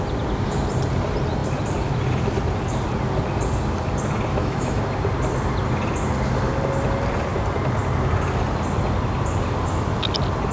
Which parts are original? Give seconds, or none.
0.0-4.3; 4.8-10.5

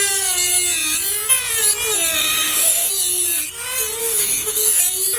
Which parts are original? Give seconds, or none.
0.0-2.2; 2.9-4.0; 4.8-5.2

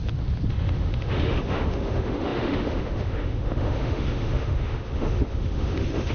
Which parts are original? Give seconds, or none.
0.0-0.5

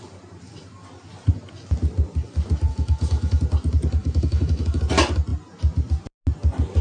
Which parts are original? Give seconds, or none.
0.0-2.7; 3.4-4.0; 4.8-6.8

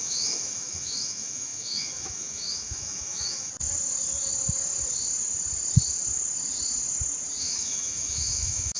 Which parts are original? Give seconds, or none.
3.5-7.4

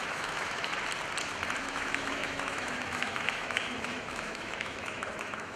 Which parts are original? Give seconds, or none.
0.7-1.6

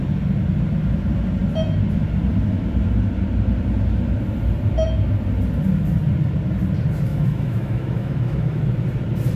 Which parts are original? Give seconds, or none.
0.0-7.1; 8.6-9.4